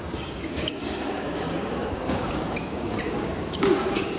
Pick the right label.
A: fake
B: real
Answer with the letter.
A